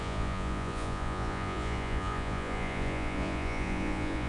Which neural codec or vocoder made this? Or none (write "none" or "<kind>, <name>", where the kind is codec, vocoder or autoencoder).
vocoder, Vocos